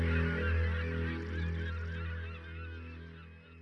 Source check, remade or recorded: recorded